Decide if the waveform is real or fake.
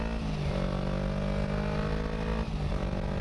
real